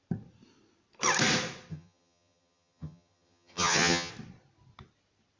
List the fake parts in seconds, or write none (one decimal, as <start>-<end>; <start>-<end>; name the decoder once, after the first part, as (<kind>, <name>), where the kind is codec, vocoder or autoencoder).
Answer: 1.7-4.1 (vocoder, HiFi-GAN)